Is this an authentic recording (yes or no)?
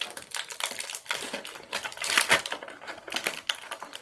yes